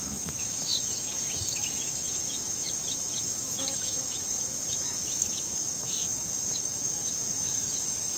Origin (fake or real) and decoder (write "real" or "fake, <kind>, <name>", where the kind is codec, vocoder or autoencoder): fake, autoencoder, DAC-VAE